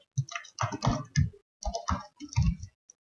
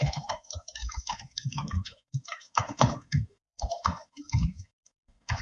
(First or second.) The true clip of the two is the first